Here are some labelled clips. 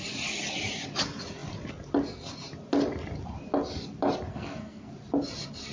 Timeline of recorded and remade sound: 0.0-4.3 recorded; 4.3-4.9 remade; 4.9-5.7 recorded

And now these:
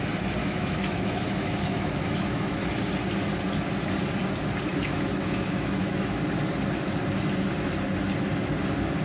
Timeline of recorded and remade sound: 0.0-0.4 recorded; 0.4-2.7 remade; 2.7-4.7 recorded; 4.7-6.2 remade; 6.2-9.0 recorded

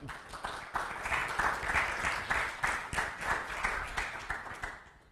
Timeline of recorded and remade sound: 0.0-5.1 recorded

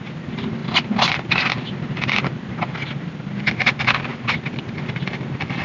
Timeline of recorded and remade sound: 0.0-0.6 recorded; 0.6-3.4 remade; 3.4-4.1 recorded; 4.1-5.0 remade; 5.0-5.6 recorded

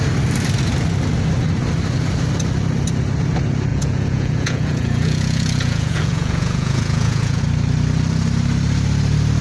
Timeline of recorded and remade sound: 0.0-3.7 recorded; 3.7-7.4 remade; 7.4-9.4 recorded

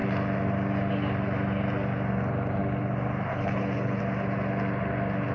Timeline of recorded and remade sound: 0.0-3.3 recorded; 3.3-4.0 remade; 4.0-5.3 recorded

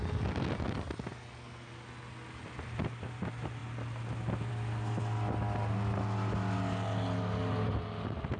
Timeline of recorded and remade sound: 0.0-8.4 recorded